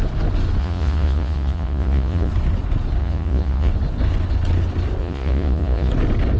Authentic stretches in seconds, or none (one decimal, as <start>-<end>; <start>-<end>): 0.0-0.6; 2.3-3.0; 3.7-5.0; 5.9-6.4